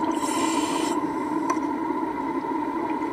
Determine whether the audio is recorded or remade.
remade